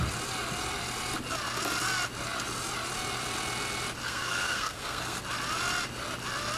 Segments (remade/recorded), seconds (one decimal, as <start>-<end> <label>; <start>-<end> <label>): 0.0-4.0 recorded; 4.0-5.2 remade; 5.2-6.6 recorded

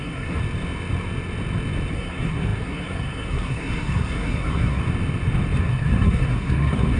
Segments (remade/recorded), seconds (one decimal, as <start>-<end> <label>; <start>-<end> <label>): 0.0-0.4 remade; 0.4-1.9 recorded; 1.9-4.8 remade; 4.8-5.6 recorded; 5.6-7.0 remade

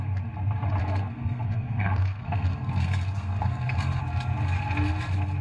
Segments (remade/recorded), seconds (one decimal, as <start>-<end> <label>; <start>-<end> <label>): 0.0-0.8 recorded; 0.8-4.0 remade; 4.0-5.4 recorded

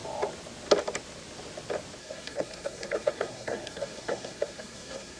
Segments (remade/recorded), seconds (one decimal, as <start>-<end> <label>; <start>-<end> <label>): 0.0-2.0 recorded; 2.0-5.2 remade

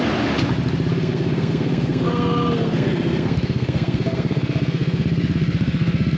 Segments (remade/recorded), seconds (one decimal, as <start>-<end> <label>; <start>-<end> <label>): 0.0-0.9 recorded; 0.9-6.2 remade

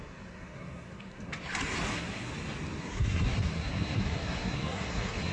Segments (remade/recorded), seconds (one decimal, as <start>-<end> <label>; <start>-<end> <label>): 0.0-1.3 remade; 1.3-1.9 recorded; 1.9-2.3 remade; 2.3-2.8 recorded; 2.8-5.3 remade